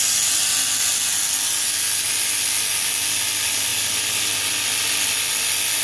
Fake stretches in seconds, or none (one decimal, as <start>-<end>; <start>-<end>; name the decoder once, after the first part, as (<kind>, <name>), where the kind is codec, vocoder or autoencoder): none